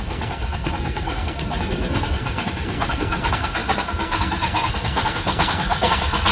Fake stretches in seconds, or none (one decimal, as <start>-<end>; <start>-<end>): 0.0-6.3